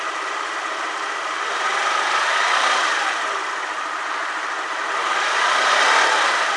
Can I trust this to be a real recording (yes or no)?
yes